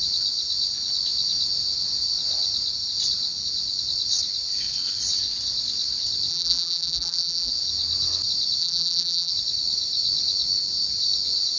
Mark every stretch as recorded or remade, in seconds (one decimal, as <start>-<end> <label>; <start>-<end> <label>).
0.0-6.3 recorded; 6.3-7.5 remade; 7.5-8.6 recorded; 8.6-9.3 remade; 9.3-11.6 recorded

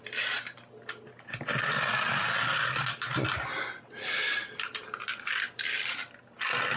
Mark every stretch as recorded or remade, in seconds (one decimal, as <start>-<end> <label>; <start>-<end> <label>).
0.0-4.4 recorded; 4.4-6.3 remade; 6.3-6.8 recorded

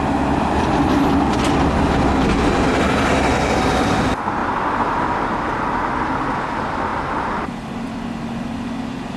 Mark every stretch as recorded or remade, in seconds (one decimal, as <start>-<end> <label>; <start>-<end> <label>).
0.0-6.9 recorded; 6.9-7.5 remade; 7.5-9.2 recorded

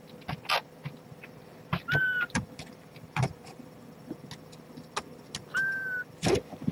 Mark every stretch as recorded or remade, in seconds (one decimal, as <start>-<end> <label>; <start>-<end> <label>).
0.0-2.0 recorded; 2.0-3.7 remade; 3.7-6.7 recorded

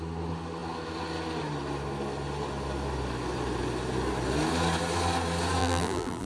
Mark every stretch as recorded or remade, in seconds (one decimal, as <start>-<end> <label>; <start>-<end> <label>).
0.0-5.6 recorded; 5.6-6.3 remade

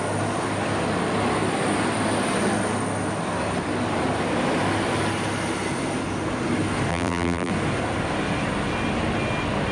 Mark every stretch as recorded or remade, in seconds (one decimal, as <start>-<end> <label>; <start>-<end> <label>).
0.0-6.9 recorded; 6.9-7.5 remade; 7.5-9.7 recorded

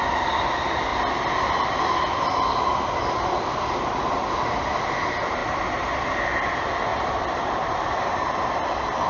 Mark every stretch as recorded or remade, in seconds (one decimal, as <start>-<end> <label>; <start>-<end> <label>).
0.0-6.9 recorded; 6.9-8.4 remade; 8.4-9.1 recorded